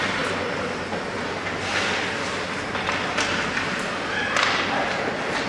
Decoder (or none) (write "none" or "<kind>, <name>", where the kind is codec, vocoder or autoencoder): none